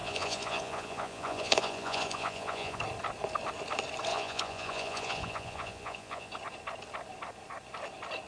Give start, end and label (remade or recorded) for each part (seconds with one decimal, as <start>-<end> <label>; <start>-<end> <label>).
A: 0.0-2.8 remade; 2.8-4.1 recorded; 4.1-6.3 remade; 6.3-8.3 recorded